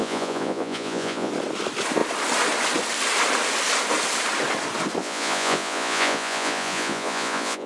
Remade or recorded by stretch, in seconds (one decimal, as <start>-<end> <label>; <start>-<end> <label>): 0.0-1.3 remade; 1.3-5.0 recorded; 5.0-7.7 remade